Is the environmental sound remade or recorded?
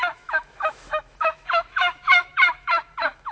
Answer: remade